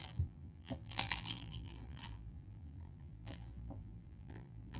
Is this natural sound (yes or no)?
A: no